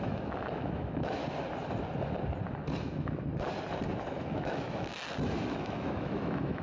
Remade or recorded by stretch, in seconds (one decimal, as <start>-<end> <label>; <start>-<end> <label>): 0.0-1.2 remade; 1.2-2.8 recorded; 2.8-3.3 remade; 3.3-4.2 recorded; 4.2-4.9 remade; 4.9-5.5 recorded; 5.5-6.6 remade